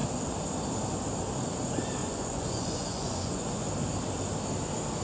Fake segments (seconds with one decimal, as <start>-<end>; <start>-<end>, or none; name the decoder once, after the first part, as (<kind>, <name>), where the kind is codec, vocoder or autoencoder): 2.0-3.7 (vocoder, Vocos)